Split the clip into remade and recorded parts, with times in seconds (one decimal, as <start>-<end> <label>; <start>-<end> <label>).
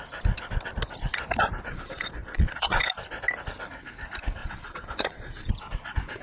0.0-1.7 recorded; 1.7-2.8 remade; 2.8-4.4 recorded; 4.4-5.5 remade; 5.5-6.2 recorded